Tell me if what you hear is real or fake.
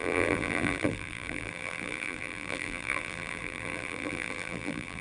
fake